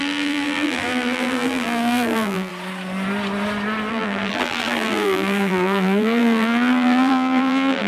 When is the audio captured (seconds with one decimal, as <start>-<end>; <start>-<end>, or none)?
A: 2.5-3.9